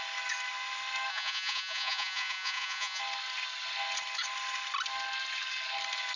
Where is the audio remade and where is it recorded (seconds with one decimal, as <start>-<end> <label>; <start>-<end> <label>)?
0.0-1.1 recorded; 1.1-3.0 remade; 3.0-6.2 recorded